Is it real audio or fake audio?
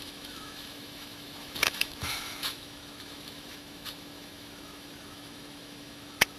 fake